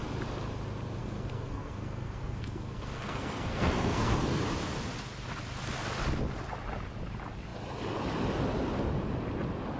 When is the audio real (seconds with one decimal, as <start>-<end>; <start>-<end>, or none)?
0.0-1.0; 4.4-9.8